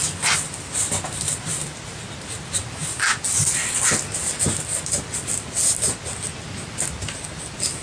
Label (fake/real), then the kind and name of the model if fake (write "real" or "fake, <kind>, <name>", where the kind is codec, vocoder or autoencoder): real